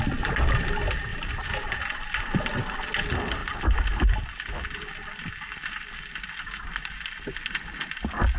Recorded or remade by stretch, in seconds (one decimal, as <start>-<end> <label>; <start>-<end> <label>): 0.0-1.1 recorded; 1.1-1.7 remade; 1.7-8.4 recorded